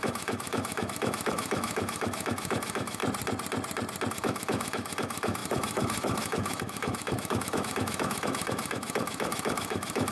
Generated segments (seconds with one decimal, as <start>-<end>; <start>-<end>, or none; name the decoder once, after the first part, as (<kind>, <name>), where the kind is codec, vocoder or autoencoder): 0.0-3.0 (autoencoder, DAC-VAE); 4.1-10.1